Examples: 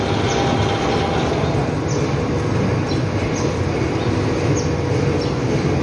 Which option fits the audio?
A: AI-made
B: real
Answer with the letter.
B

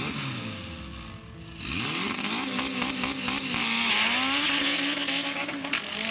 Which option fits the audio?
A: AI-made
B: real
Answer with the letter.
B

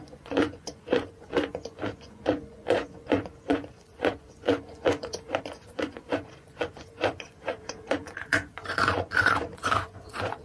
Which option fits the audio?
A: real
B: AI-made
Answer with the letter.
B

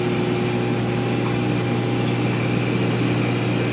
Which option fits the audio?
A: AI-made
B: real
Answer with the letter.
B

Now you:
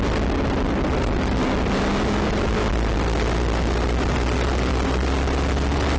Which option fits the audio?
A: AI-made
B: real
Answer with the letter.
B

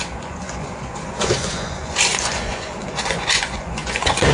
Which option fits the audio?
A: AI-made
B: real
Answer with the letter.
A